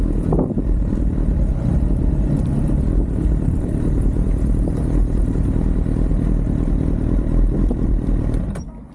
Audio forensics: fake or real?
fake